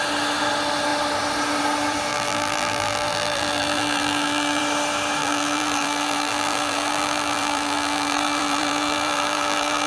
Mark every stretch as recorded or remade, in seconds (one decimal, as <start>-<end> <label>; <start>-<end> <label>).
0.0-2.1 recorded; 2.1-4.6 remade; 4.6-5.2 recorded; 5.2-9.9 remade